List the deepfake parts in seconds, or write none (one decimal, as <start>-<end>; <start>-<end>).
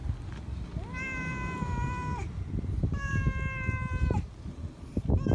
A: none